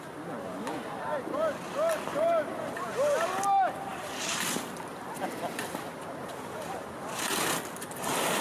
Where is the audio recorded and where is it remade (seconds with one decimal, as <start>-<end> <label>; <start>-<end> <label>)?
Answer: 0.0-8.4 recorded